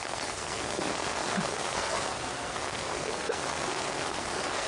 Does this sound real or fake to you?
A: fake